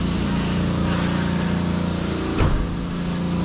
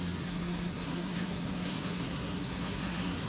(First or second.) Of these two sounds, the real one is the first